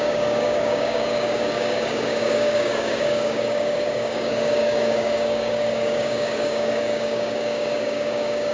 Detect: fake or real fake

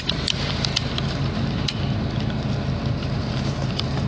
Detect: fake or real fake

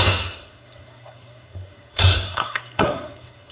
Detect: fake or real fake